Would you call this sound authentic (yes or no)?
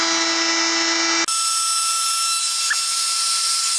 yes